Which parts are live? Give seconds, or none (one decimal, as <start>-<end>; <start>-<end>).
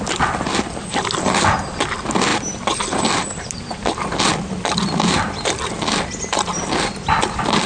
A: 0.0-7.7